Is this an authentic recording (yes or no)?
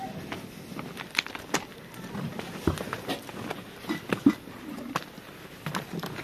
yes